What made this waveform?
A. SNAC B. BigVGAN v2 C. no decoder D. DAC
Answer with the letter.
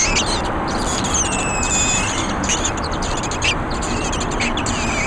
C